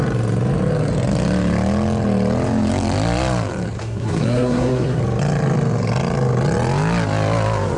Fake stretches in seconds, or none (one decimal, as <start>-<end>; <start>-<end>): 3.8-5.0